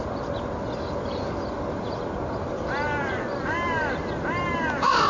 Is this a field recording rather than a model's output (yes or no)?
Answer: yes